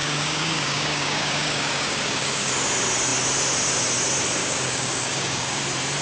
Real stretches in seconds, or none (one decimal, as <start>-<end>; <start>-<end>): 2.5-4.4; 5.6-6.0